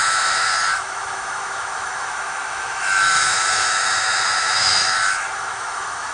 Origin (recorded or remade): remade